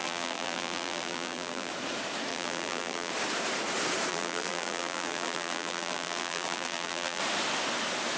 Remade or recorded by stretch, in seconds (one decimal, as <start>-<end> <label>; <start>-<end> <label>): 0.0-1.7 remade; 1.7-2.3 recorded; 2.3-3.1 remade; 3.1-4.1 recorded; 4.1-7.2 remade; 7.2-8.2 recorded